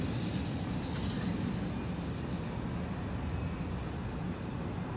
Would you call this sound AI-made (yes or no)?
no